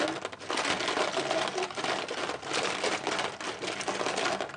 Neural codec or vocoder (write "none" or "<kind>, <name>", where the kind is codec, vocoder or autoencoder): none